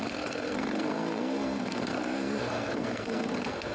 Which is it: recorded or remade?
remade